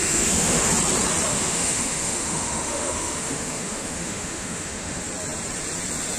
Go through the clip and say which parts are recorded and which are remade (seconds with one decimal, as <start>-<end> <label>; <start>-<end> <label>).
0.0-0.7 remade; 0.7-1.3 recorded; 1.3-5.0 remade; 5.0-6.2 recorded